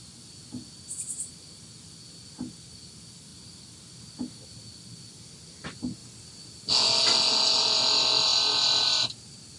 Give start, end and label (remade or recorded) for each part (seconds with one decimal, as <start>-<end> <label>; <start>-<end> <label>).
0.0-9.6 recorded